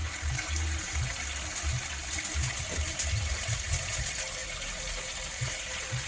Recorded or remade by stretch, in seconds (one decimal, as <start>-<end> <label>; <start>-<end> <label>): 0.0-6.1 recorded